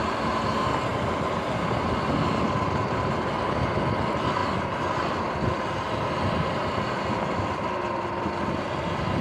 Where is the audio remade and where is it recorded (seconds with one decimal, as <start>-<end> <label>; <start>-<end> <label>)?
0.0-0.9 recorded; 0.9-2.4 remade; 2.4-4.4 recorded; 4.4-8.6 remade; 8.6-9.2 recorded